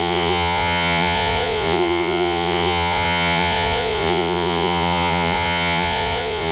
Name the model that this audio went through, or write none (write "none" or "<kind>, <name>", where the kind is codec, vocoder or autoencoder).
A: vocoder, Vocos